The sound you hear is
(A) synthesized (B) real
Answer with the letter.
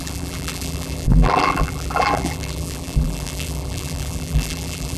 A